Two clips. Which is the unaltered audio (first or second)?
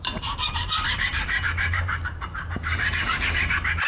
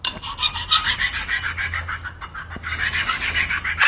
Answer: second